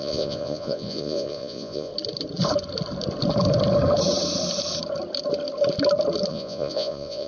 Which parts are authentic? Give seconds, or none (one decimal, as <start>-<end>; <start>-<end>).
1.9-6.3